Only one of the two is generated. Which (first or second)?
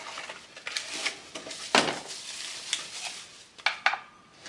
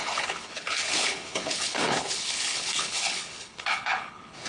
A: second